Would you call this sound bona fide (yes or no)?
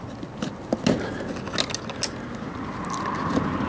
yes